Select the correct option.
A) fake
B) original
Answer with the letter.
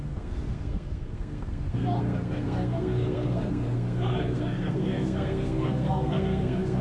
A